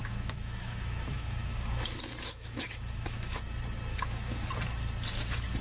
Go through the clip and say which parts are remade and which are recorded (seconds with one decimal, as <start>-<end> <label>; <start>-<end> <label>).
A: 0.0-3.4 remade; 3.4-3.9 recorded; 3.9-4.5 remade; 4.5-5.6 recorded